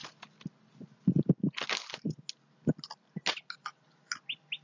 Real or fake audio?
real